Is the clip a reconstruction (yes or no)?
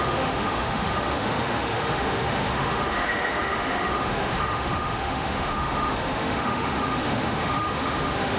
yes